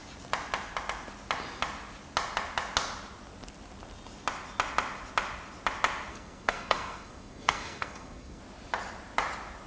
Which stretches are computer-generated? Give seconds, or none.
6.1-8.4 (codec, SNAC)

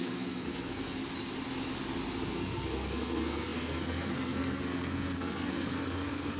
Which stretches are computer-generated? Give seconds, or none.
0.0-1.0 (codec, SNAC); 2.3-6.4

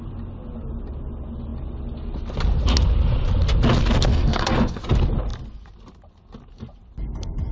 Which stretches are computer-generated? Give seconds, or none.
4.1-4.8 (codec, SNAC)

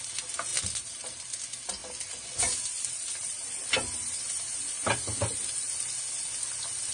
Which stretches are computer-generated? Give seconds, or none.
none

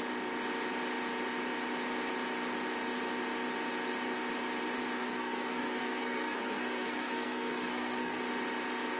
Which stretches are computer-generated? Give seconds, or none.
5.0-8.2 (codec, SNAC)

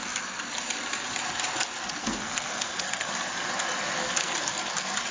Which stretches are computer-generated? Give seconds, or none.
2.0-3.1 (codec, SNAC); 4.0-4.5

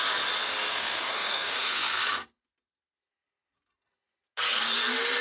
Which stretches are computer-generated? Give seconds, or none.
0.7-2.0 (codec, SNAC)

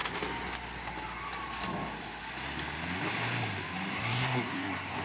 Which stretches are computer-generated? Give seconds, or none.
3.9-5.0 (codec, SNAC)